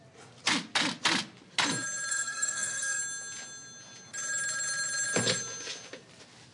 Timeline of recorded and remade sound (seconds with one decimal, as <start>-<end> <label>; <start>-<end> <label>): 0.0-2.1 recorded; 2.1-3.0 remade; 3.0-6.5 recorded